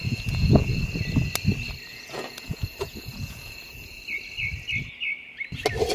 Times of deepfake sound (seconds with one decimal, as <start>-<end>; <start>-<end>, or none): 0.0-0.8; 1.9-4.0